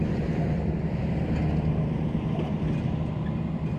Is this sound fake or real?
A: real